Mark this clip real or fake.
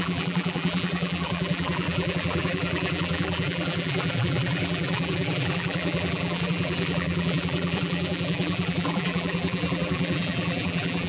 fake